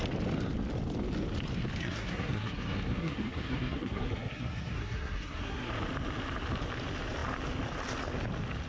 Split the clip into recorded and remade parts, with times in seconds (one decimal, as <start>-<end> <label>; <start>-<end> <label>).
0.0-1.8 recorded; 1.8-5.7 remade; 5.7-8.7 recorded